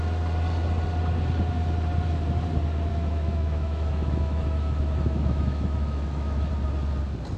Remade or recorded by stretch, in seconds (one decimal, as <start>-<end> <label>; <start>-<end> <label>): 0.0-2.9 recorded; 2.9-6.5 remade; 6.5-7.4 recorded